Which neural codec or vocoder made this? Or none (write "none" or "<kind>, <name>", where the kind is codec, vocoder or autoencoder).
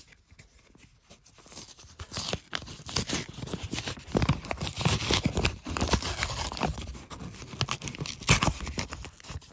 none